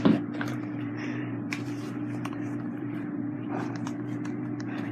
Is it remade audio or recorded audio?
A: remade